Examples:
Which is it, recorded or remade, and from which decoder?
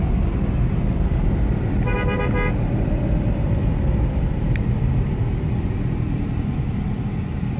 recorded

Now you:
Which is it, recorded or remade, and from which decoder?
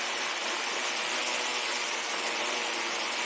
recorded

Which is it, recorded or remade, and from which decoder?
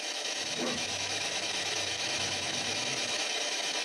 remade, autoencoder, DAC-VAE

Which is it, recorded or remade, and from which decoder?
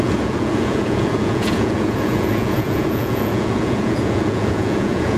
remade, vocoder, Vocos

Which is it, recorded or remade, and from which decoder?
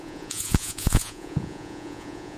remade, vocoder, Vocos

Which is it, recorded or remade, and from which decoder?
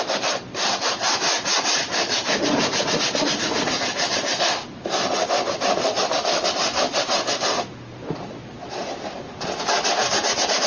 recorded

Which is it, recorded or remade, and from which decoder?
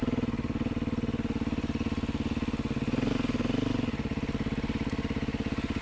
recorded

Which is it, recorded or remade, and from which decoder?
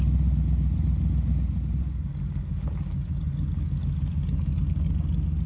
recorded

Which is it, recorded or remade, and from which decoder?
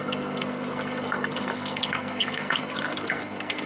remade, codec, SNAC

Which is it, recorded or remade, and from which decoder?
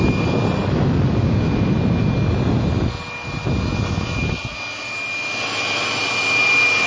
recorded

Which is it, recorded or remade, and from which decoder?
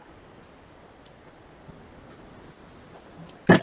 recorded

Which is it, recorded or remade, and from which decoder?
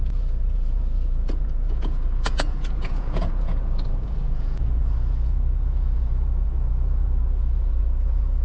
remade, vocoder, Vocos